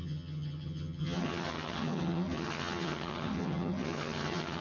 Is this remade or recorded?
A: remade